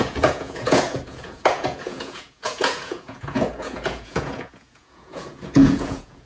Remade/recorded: remade